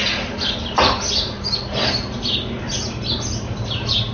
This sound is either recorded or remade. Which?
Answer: recorded